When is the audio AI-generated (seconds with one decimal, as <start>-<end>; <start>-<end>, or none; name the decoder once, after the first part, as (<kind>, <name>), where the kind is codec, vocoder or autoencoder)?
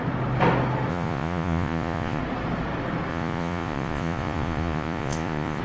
0.9-2.2 (vocoder, Vocos); 3.1-5.6